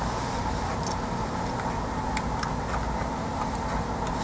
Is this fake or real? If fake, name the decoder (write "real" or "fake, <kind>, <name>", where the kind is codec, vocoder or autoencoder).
real